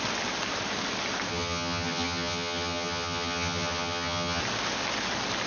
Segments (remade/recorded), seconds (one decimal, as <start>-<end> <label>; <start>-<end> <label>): 0.0-1.3 recorded; 1.3-4.4 remade; 4.4-5.5 recorded